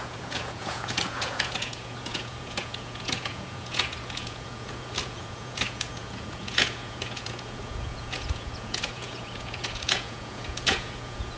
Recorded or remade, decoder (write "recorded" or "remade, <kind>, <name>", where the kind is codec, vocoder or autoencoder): remade, vocoder, Vocos